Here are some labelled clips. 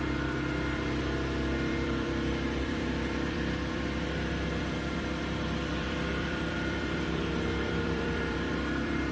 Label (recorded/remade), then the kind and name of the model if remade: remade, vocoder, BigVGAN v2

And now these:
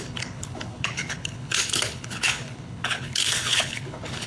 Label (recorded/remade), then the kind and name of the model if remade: remade, codec, HILCodec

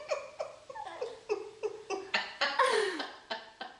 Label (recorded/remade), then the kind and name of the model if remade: remade, vocoder, BigVGAN v2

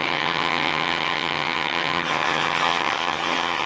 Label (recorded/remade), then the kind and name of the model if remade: remade, vocoder, HiFi-GAN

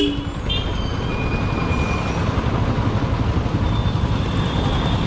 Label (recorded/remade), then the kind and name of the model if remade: recorded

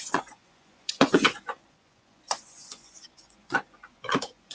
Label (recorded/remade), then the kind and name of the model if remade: remade, vocoder, Vocos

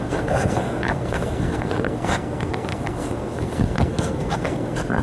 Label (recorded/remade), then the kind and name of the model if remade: remade, codec, SNAC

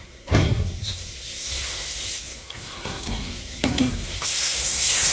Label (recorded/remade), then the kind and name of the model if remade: remade, codec, SNAC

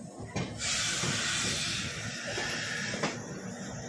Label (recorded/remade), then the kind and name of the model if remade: recorded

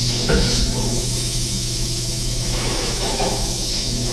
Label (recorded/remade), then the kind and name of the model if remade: remade, autoencoder, DAC-VAE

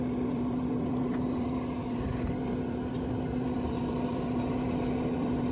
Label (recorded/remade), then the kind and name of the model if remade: remade, vocoder, BigVGAN v2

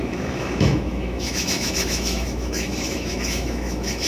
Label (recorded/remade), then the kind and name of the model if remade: remade, autoencoder, DAC-VAE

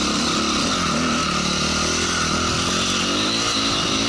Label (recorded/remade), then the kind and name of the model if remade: recorded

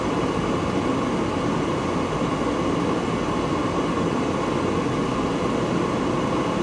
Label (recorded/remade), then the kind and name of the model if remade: recorded